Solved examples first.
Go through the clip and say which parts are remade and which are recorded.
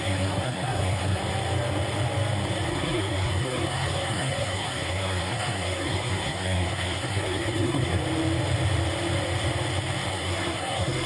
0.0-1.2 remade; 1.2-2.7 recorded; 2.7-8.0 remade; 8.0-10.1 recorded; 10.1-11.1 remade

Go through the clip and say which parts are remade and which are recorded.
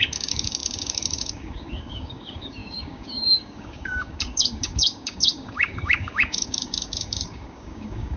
0.0-8.2 remade